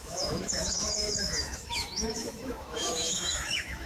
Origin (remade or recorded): remade